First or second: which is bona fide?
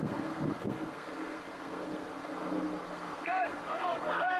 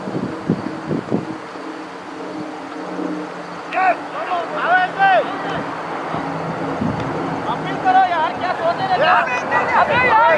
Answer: second